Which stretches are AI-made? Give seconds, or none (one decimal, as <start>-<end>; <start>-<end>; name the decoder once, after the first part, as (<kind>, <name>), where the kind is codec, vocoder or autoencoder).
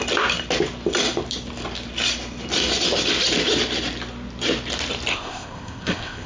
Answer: 5.1-6.3 (codec, ZipCodec)